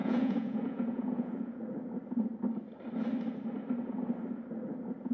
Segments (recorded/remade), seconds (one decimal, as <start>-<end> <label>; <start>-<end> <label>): 0.0-1.6 remade; 1.6-5.1 recorded